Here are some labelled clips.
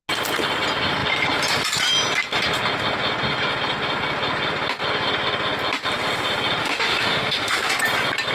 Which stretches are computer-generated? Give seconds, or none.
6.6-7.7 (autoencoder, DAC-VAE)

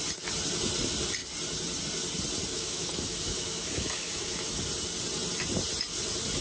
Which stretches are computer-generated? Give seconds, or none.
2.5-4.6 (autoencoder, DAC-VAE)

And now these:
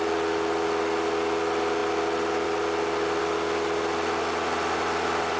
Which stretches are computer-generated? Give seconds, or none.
none

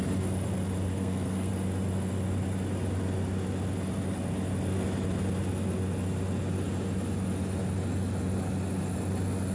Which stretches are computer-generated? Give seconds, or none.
0.9-1.5 (codec, SNAC)

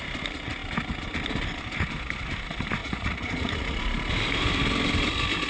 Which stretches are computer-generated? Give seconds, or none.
2.8-3.9 (vocoder, Vocos)